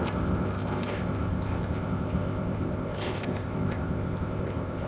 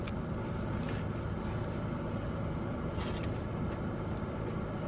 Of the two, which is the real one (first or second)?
second